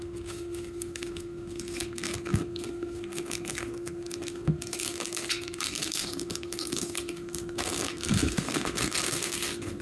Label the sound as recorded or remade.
remade